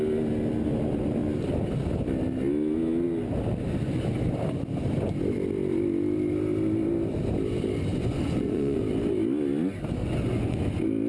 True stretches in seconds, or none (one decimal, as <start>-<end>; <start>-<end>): 0.0-7.9; 8.8-10.0; 10.6-11.1

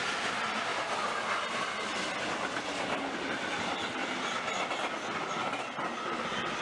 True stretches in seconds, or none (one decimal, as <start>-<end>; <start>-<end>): 0.0-6.6

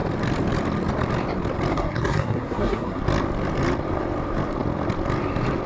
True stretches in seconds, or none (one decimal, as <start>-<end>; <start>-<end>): 0.0-1.7; 3.0-5.7

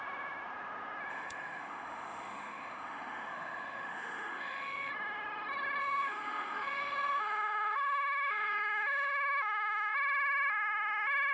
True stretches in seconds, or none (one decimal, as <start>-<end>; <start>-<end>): 0.0-1.1; 4.9-5.8; 9.9-11.3

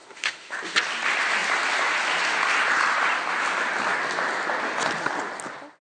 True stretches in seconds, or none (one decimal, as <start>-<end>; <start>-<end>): 0.6-6.0

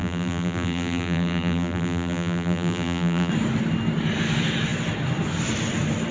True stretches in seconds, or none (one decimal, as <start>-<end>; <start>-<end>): 3.3-6.1

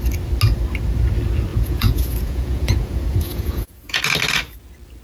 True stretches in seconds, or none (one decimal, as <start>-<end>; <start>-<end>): 0.0-1.5; 4.0-5.0